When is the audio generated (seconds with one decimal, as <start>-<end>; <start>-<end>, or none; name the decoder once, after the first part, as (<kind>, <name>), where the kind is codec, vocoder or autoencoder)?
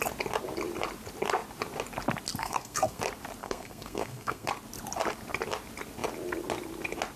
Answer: 2.4-3.0 (codec, SNAC); 3.4-4.5